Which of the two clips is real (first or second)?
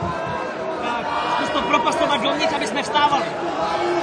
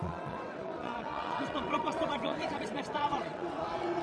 first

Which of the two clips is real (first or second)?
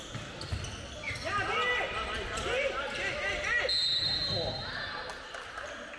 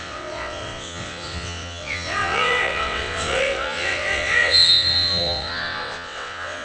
first